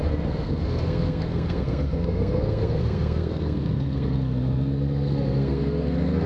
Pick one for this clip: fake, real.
fake